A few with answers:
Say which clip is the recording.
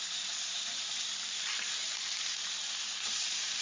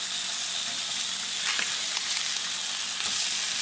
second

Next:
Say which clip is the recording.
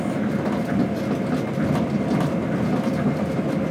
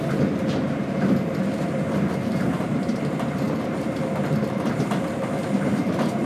first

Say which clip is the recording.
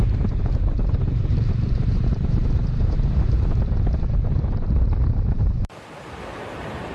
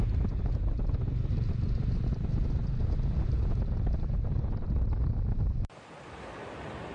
second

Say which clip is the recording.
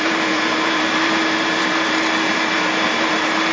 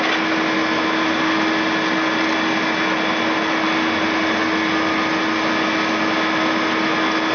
second